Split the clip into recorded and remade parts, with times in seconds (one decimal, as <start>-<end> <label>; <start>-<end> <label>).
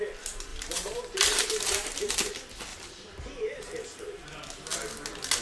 0.0-0.5 recorded; 0.5-2.1 remade; 2.1-2.7 recorded; 2.7-4.4 remade; 4.4-5.4 recorded